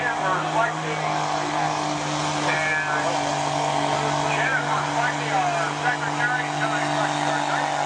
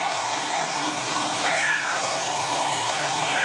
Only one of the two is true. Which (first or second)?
first